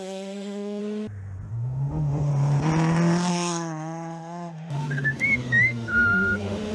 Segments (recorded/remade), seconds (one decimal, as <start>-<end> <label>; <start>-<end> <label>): 0.0-0.8 remade; 0.8-1.5 recorded; 1.5-2.3 remade; 2.3-3.3 recorded; 3.3-6.7 remade